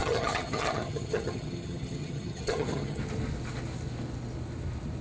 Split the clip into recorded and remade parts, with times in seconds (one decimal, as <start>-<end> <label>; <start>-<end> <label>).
0.0-3.0 remade; 3.0-5.0 recorded